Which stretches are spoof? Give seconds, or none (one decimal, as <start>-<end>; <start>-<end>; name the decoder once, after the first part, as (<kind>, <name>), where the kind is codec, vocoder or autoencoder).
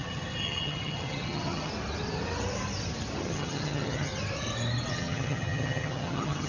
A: 0.0-1.7 (vocoder, HiFi-GAN); 3.2-4.1; 4.9-6.5